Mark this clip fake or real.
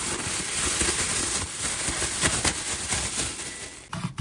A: real